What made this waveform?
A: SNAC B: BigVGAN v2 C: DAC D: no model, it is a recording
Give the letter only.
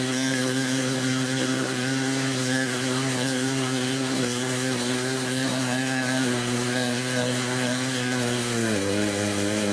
A